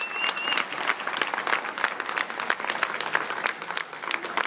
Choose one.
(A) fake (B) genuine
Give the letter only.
B